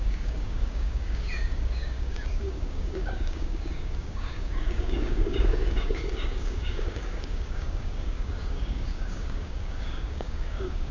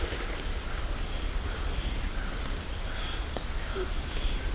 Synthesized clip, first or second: first